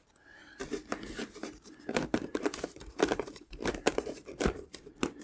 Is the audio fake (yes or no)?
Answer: yes